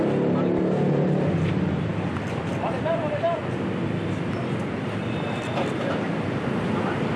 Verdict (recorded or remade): recorded